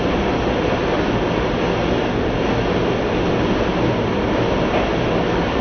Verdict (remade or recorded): recorded